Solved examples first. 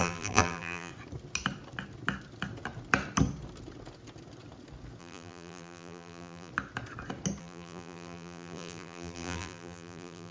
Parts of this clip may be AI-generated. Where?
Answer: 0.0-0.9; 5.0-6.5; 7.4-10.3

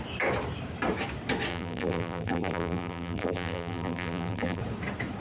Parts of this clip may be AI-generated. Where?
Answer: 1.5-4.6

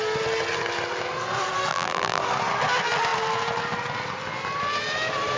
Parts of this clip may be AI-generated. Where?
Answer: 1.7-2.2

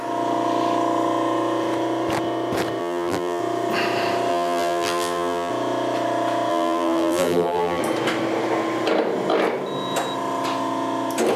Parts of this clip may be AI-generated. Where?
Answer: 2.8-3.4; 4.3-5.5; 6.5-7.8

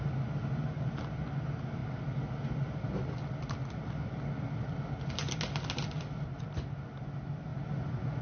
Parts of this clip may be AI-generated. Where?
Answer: none